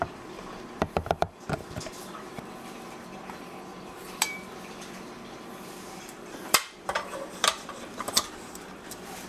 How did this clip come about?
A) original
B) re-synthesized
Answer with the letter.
B